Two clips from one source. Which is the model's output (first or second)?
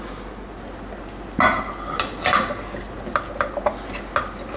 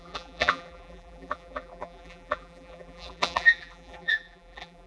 second